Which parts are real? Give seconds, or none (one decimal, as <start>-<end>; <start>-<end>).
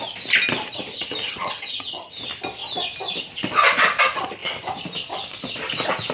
0.0-0.9; 2.2-6.1